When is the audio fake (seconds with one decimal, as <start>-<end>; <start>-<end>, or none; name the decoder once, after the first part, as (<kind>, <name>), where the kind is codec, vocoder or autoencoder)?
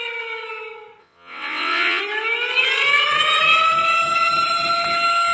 1.0-2.0 (vocoder, WaveNeXt)